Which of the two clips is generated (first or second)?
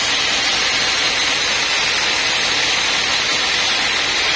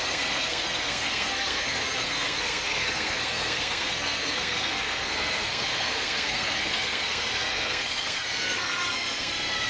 second